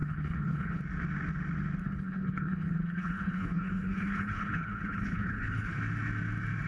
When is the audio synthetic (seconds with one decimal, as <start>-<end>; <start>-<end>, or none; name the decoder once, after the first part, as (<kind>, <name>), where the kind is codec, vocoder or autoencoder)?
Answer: 0.0-0.8 (codec, HILCodec); 1.8-5.8